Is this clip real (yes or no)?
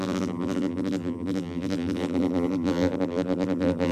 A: no